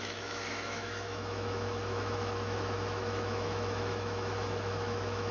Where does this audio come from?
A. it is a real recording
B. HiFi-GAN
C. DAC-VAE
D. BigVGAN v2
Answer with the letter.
C